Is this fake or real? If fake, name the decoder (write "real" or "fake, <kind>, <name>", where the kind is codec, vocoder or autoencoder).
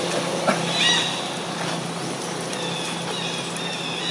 real